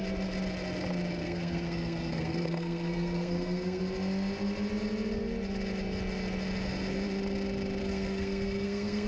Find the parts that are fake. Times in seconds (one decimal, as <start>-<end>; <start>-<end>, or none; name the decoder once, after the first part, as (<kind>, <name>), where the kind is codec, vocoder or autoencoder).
1.2-3.8 (codec, SNAC); 7.8-9.1